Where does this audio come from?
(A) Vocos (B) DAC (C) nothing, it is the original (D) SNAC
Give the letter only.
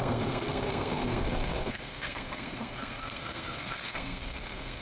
D